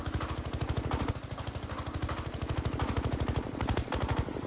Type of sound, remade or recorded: recorded